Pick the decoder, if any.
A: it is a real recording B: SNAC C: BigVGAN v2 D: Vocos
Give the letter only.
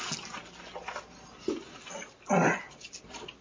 A